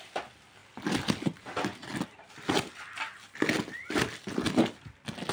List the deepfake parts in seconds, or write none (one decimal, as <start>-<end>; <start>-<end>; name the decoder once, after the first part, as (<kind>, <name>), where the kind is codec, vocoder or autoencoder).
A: none